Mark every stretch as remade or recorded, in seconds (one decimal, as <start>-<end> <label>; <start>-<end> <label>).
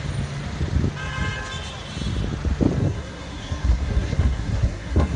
0.0-2.8 recorded; 2.8-5.2 remade